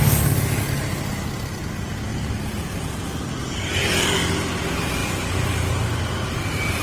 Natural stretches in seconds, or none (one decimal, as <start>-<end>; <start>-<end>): 0.0-2.1; 3.0-3.4; 4.3-6.8